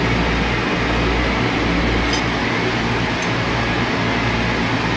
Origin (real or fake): real